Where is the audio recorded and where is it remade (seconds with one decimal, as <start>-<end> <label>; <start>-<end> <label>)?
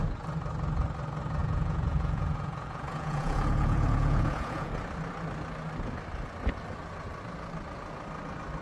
0.0-1.4 recorded; 1.4-4.7 remade; 4.7-8.6 recorded